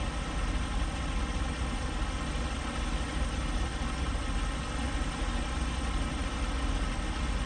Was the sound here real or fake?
real